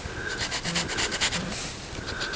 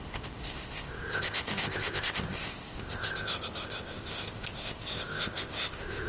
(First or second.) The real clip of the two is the first